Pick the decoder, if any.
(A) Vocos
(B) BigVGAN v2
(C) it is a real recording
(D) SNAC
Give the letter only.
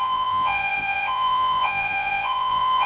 A